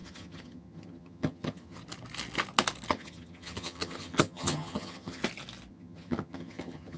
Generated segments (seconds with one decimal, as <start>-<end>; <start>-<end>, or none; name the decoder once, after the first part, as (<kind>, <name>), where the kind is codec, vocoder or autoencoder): 0.0-1.8 (vocoder, HiFi-GAN); 2.9-5.2; 5.7-7.0